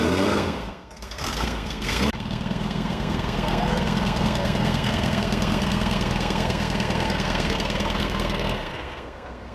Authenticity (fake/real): fake